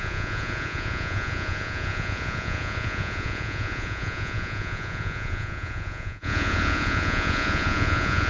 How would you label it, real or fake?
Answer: fake